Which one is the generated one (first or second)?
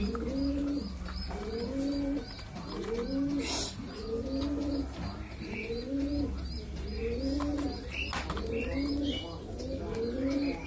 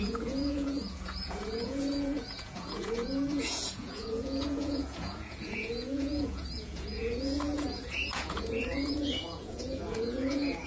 second